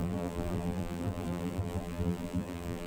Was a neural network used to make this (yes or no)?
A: yes